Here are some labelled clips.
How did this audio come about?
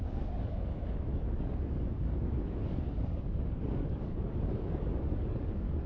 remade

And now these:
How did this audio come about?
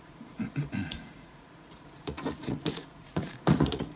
remade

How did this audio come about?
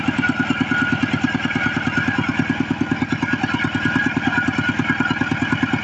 recorded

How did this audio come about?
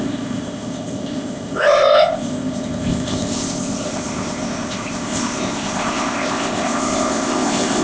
remade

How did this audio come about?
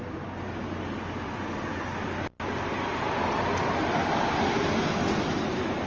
recorded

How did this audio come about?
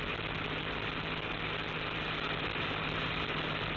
recorded